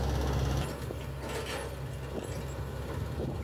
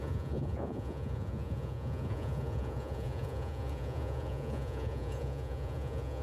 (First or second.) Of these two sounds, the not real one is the second